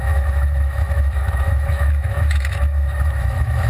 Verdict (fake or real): fake